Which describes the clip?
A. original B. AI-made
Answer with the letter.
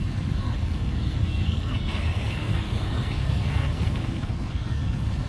B